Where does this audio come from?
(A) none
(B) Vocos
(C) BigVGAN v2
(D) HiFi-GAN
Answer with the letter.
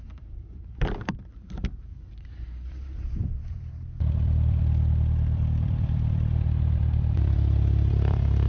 C